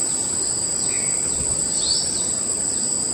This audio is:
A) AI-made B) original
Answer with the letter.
B